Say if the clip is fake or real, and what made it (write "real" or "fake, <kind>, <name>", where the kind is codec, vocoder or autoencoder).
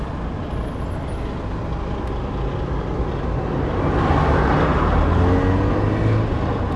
real